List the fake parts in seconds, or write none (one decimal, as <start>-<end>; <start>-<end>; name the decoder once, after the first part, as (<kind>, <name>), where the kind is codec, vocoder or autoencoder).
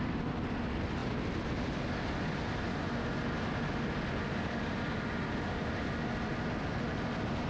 none